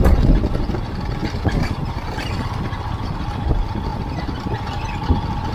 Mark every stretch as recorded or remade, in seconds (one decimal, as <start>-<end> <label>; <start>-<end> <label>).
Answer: 0.0-5.5 recorded